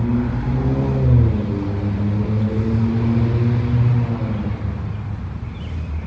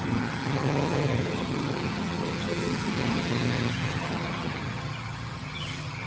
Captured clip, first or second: first